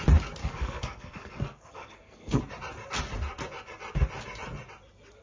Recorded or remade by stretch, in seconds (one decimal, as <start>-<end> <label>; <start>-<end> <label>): 0.0-0.4 recorded; 0.4-2.4 remade; 2.4-5.2 recorded